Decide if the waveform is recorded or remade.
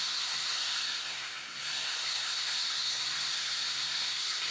remade